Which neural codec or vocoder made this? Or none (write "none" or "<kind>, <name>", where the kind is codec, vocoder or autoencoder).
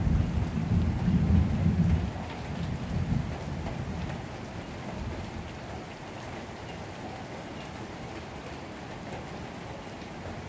none